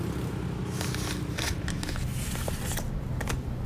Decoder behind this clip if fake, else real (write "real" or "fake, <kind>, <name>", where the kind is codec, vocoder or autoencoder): real